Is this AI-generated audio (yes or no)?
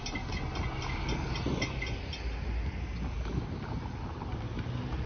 no